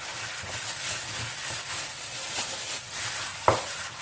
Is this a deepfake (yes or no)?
no